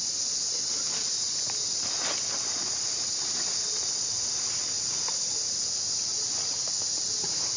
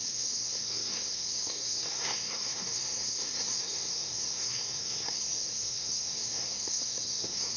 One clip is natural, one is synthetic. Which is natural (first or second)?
first